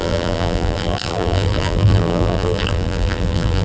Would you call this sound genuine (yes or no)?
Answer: no